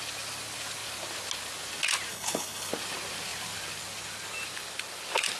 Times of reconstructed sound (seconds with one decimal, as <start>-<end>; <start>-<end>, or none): 2.1-2.7